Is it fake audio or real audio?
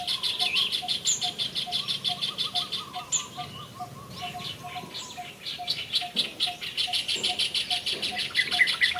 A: real